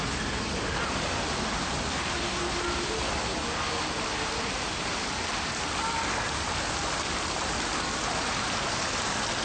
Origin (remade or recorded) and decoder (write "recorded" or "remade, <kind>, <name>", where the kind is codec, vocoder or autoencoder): recorded